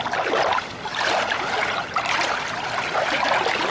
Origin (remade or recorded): recorded